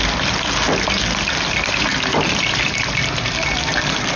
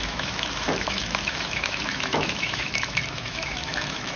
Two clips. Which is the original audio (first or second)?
first